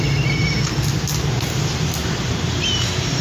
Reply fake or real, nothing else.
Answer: real